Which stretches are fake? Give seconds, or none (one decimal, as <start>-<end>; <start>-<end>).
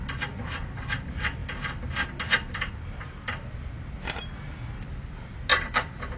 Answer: 5.5-6.2